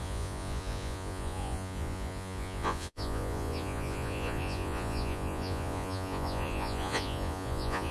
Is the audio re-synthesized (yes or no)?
yes